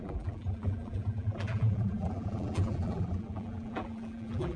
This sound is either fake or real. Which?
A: fake